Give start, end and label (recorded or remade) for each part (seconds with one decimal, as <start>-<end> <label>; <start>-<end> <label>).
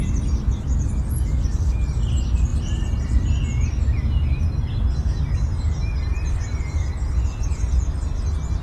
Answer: 0.0-2.5 recorded; 2.5-3.1 remade; 3.1-8.6 recorded